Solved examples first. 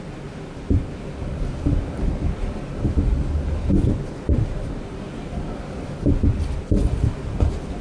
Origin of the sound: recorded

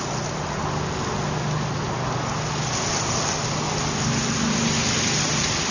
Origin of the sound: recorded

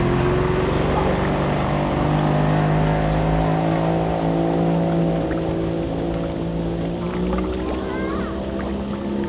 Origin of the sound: recorded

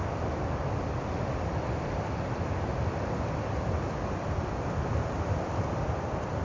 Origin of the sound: remade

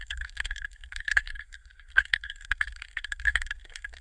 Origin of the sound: remade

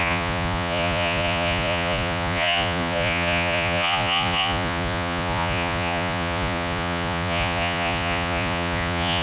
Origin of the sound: remade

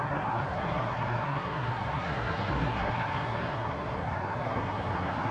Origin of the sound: remade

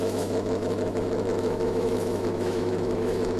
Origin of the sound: remade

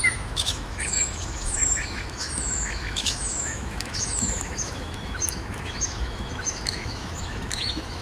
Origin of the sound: remade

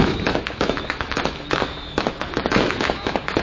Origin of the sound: remade